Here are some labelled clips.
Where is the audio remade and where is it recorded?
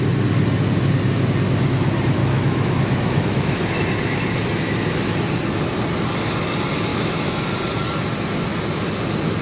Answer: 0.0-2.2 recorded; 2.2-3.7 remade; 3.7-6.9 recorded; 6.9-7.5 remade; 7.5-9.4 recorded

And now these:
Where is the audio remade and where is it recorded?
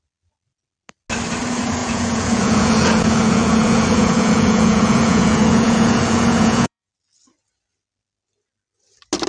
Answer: 0.0-1.8 recorded; 1.8-6.9 remade; 6.9-9.3 recorded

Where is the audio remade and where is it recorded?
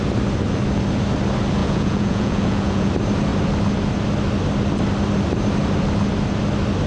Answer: 0.0-1.6 recorded; 1.6-2.9 remade; 2.9-6.9 recorded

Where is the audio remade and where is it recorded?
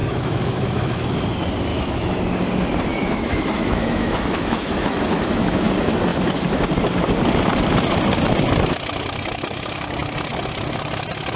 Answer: 0.0-1.0 remade; 1.0-1.7 recorded; 1.7-2.2 remade; 2.2-2.9 recorded; 2.9-5.6 remade; 5.6-11.4 recorded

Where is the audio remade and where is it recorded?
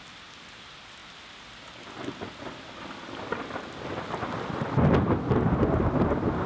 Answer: 0.0-6.5 recorded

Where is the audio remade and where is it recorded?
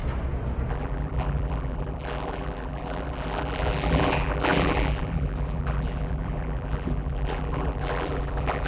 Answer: 0.0-0.7 recorded; 0.7-8.7 remade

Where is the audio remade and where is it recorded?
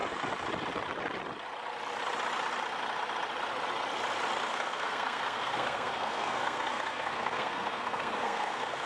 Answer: 0.0-4.5 recorded; 4.5-8.9 remade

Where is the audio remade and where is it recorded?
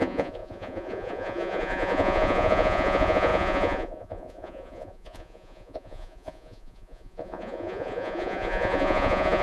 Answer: 0.0-9.4 remade